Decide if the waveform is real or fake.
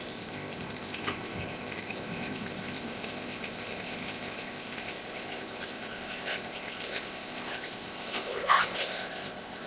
fake